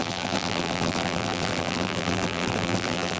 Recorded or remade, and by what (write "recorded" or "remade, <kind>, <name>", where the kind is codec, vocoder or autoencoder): remade, vocoder, BigVGAN v2